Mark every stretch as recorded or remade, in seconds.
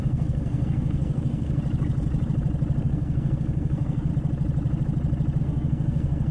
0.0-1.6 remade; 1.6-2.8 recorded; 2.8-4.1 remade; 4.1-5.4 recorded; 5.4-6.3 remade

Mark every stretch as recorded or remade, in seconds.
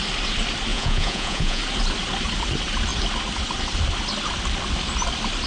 0.0-0.7 recorded; 0.7-1.6 remade; 1.6-5.5 recorded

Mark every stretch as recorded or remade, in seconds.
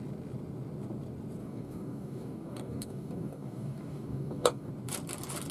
0.0-1.4 recorded; 1.4-4.7 remade; 4.7-5.5 recorded